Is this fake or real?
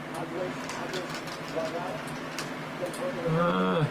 real